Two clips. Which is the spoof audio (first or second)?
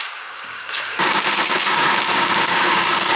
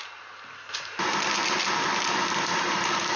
first